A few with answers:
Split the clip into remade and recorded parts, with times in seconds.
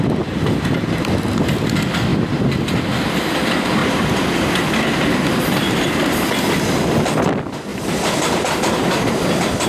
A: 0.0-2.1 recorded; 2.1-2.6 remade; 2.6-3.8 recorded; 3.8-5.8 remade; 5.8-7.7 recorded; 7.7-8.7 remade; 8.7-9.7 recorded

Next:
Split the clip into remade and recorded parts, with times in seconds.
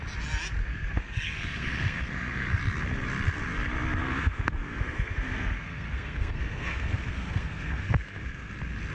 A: 0.0-0.6 recorded; 0.6-2.6 remade; 2.6-4.0 recorded; 4.0-8.5 remade; 8.5-8.9 recorded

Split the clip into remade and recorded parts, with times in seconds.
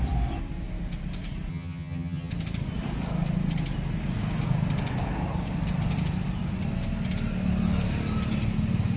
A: 0.0-1.5 recorded; 1.5-2.3 remade; 2.3-9.0 recorded